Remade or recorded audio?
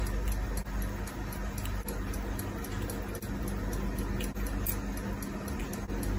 recorded